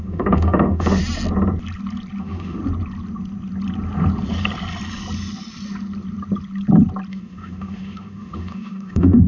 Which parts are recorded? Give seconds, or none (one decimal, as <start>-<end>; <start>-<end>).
1.0-2.2; 2.6-7.1